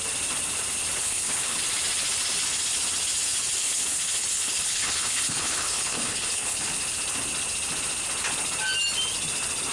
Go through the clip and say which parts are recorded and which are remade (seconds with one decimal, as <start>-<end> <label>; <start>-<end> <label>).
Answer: 0.0-1.0 recorded; 1.0-1.6 remade; 1.6-3.6 recorded; 3.6-6.7 remade; 6.7-9.7 recorded